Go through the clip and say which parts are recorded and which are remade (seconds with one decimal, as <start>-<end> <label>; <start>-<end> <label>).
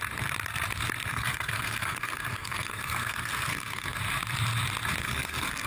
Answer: 0.0-1.1 recorded; 1.1-4.0 remade; 4.0-5.0 recorded; 5.0-5.7 remade